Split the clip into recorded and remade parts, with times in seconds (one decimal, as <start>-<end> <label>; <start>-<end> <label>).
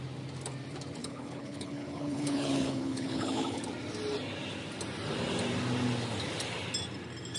0.0-1.0 recorded; 1.0-3.6 remade; 3.6-7.4 recorded